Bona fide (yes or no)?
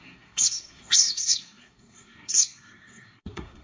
no